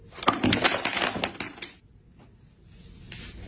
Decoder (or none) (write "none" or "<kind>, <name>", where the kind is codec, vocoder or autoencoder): none